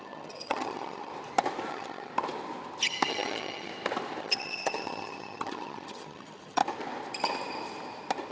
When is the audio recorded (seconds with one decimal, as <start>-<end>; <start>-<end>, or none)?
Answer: 1.1-1.7; 2.1-3.1; 3.7-4.2; 6.6-8.3